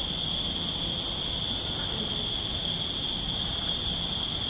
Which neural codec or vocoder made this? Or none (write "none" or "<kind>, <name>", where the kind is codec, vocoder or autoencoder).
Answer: none